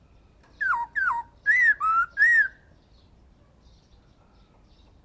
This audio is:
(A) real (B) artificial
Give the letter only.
A